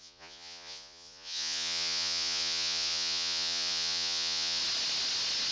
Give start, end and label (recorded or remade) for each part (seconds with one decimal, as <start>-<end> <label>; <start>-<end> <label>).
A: 0.0-4.6 remade; 4.6-5.5 recorded